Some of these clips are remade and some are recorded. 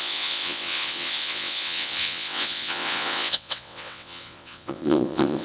remade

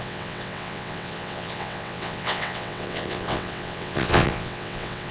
remade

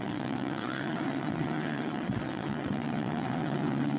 remade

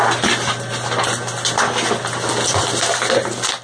recorded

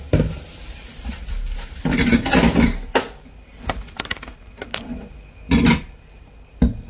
recorded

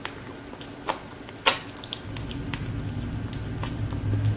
recorded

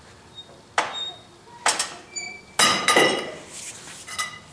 recorded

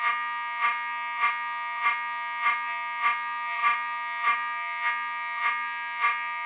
remade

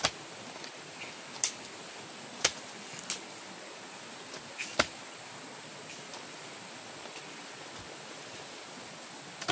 recorded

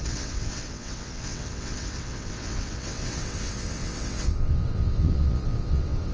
remade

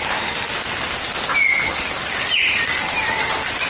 recorded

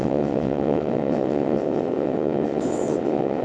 remade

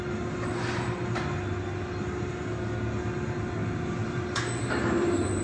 recorded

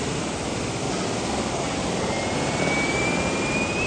recorded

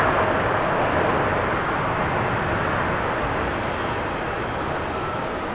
recorded